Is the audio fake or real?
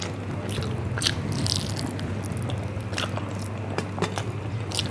real